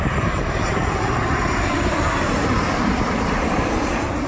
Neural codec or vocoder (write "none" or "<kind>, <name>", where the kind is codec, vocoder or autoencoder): vocoder, BigVGAN v2